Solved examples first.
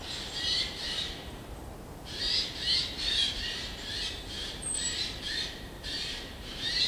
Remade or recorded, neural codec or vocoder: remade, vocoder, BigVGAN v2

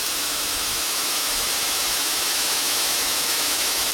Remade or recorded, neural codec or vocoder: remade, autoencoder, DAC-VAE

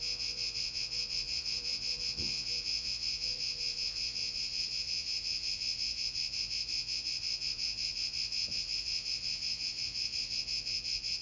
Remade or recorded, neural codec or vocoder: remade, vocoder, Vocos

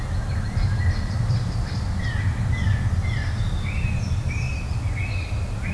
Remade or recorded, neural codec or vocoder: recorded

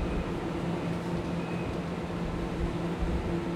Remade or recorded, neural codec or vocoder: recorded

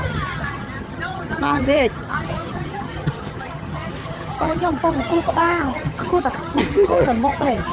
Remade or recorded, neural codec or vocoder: remade, vocoder, HiFi-GAN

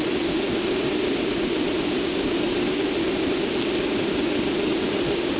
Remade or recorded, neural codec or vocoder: recorded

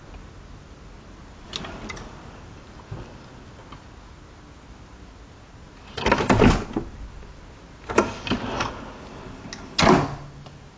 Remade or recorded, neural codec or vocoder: recorded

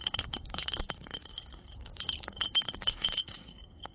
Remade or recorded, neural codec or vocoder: remade, codec, DAC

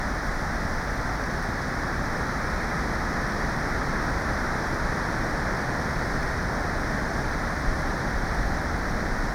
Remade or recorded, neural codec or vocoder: recorded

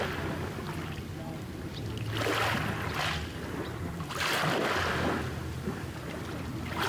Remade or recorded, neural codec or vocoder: recorded